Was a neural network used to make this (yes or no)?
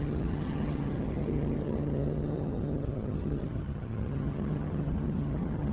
yes